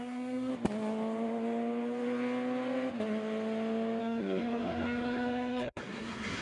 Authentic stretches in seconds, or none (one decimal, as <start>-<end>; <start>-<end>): 0.5-4.0